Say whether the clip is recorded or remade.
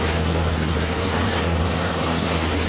remade